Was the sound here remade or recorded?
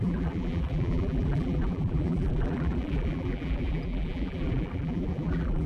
remade